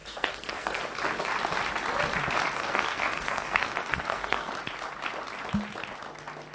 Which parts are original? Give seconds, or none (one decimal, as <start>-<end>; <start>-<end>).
0.8-2.6; 4.5-6.5